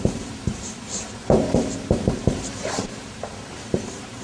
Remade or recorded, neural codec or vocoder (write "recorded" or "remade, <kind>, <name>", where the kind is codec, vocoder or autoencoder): remade, vocoder, BigVGAN v2